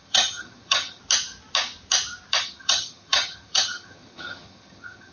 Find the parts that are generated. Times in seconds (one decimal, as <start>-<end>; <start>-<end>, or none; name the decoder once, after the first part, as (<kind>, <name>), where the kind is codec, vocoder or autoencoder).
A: 0.0-1.0 (vocoder, HiFi-GAN); 2.4-5.1